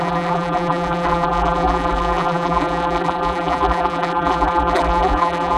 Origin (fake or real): fake